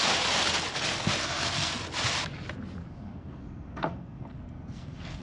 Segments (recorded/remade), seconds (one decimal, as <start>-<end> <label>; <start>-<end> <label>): 0.0-1.2 recorded; 1.2-1.7 remade; 1.7-2.8 recorded; 2.8-5.2 remade